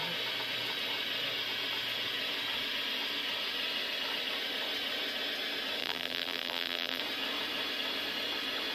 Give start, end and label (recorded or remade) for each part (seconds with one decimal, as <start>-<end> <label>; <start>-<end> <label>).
0.0-5.8 recorded; 5.8-7.0 remade; 7.0-8.7 recorded